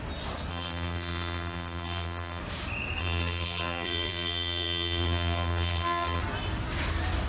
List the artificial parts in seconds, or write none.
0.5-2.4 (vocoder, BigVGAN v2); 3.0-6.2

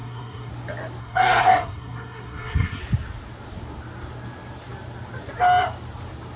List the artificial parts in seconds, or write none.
0.0-0.5 (codec, SNAC); 1.0-2.8

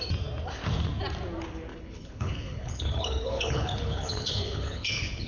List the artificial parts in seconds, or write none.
1.7-5.3 (codec, HILCodec)

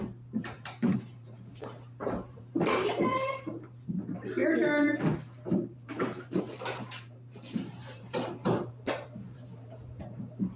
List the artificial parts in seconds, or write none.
0.0-4.4 (vocoder, BigVGAN v2); 5.5-10.6

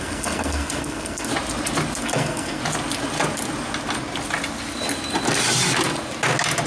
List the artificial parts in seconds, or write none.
0.0-1.3 (codec, SNAC); 2.0-2.6